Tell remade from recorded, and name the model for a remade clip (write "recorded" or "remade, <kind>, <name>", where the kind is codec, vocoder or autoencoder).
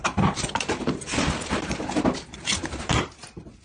remade, vocoder, BigVGAN v2